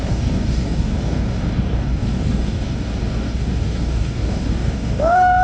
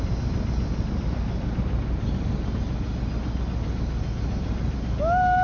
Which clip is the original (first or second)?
second